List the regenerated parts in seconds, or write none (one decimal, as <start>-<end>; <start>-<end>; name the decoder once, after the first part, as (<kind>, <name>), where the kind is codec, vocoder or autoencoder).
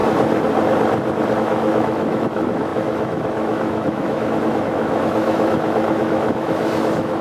1.4-7.2 (autoencoder, DAC-VAE)